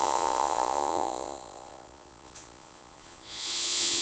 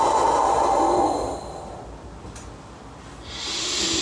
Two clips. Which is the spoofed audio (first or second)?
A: first